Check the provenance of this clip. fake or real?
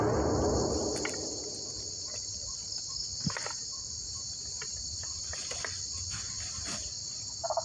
real